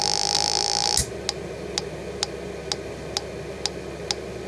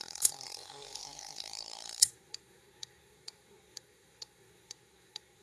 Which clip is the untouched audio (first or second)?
first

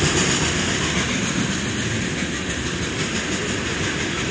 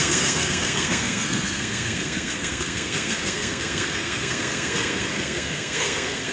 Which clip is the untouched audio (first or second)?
first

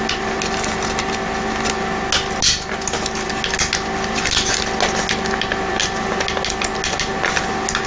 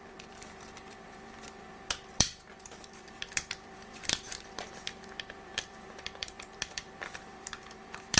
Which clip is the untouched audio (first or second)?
first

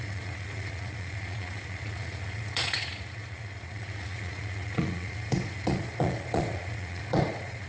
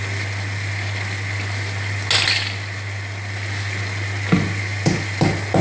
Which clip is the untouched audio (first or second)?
second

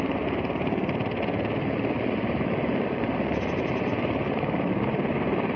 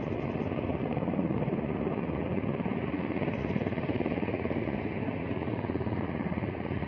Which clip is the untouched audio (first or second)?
first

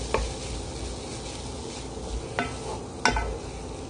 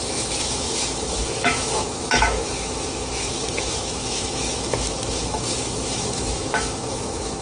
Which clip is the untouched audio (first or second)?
first